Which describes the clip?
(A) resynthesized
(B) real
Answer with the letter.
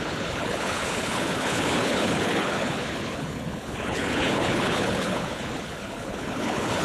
A